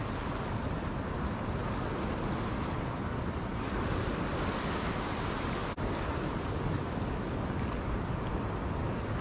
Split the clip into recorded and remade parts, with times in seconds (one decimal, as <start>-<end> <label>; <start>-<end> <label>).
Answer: 0.0-9.2 recorded